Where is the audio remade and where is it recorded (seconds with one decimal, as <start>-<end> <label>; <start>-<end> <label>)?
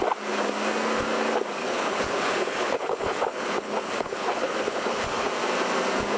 0.0-1.6 recorded; 1.6-5.3 remade; 5.3-6.2 recorded